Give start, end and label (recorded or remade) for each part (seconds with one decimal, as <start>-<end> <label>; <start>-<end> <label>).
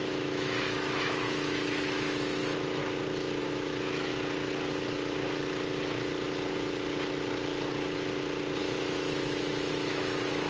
0.0-2.8 remade; 2.8-3.4 recorded; 3.4-4.1 remade; 4.1-8.6 recorded; 8.6-10.5 remade